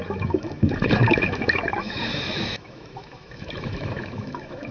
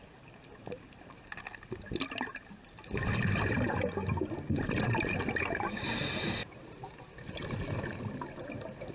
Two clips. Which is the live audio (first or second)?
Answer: second